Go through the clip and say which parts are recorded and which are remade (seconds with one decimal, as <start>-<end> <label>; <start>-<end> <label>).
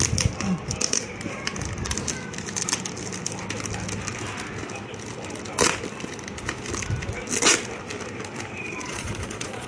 0.0-8.8 recorded; 8.8-9.7 remade